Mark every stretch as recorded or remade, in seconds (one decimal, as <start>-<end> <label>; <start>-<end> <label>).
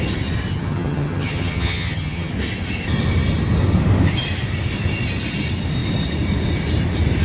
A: 0.0-0.5 recorded; 0.5-2.3 remade; 2.3-7.2 recorded